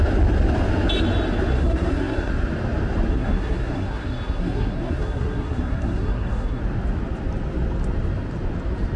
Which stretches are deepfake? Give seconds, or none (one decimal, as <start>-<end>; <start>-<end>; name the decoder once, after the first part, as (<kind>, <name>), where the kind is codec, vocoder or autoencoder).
1.5-2.3 (codec, SNAC); 3.1-6.6